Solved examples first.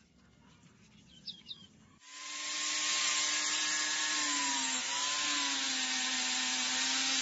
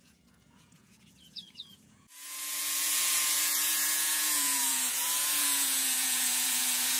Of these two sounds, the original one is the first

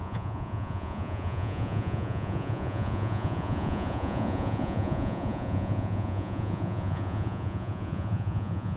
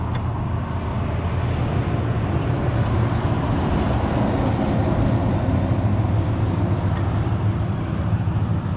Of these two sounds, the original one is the second